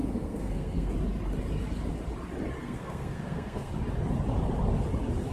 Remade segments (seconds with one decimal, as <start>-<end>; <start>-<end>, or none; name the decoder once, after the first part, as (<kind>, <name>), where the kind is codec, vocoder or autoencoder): 0.0-0.9 (codec, SNAC); 2.6-3.7